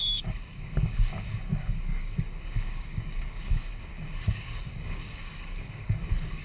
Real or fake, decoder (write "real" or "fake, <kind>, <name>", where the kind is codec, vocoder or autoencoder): fake, codec, DAC